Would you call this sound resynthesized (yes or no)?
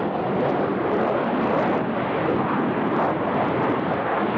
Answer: no